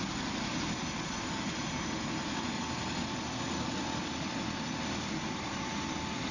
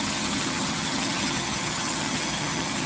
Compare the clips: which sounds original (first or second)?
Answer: first